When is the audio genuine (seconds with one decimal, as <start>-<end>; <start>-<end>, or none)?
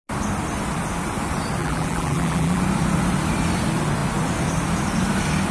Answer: 0.0-1.6; 2.6-5.5